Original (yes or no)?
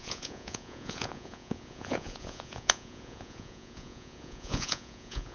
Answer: no